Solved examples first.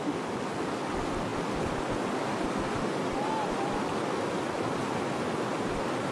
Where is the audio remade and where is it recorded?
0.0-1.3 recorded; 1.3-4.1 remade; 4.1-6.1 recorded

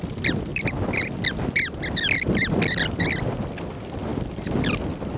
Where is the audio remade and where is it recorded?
0.0-5.2 recorded

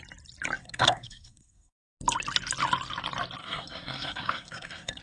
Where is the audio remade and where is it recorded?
0.0-0.6 recorded; 0.6-1.8 remade; 1.8-3.4 recorded; 3.4-5.0 remade

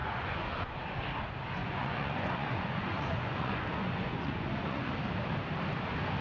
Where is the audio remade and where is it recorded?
0.0-0.8 remade; 0.8-1.6 recorded; 1.6-4.9 remade; 4.9-6.2 recorded